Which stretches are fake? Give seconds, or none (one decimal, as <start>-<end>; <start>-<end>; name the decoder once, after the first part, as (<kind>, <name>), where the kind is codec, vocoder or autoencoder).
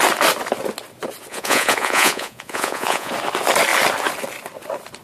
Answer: 1.3-3.1 (vocoder, Vocos)